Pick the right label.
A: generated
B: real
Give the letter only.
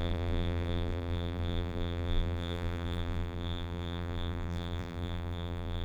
A